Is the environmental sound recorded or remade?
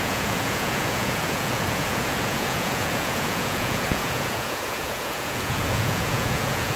remade